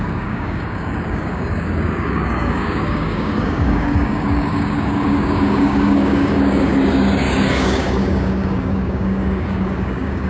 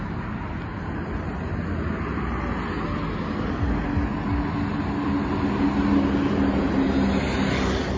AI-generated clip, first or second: first